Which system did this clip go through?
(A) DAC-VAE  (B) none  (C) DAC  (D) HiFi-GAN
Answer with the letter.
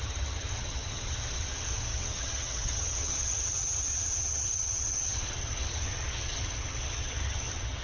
D